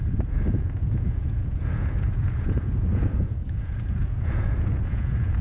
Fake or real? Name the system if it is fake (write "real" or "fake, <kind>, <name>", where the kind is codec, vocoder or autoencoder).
fake, vocoder, Vocos